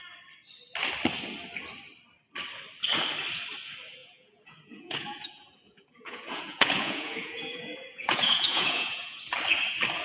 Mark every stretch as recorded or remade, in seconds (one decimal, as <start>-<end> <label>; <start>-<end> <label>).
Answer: 0.0-4.0 recorded; 4.0-9.2 remade; 9.2-10.0 recorded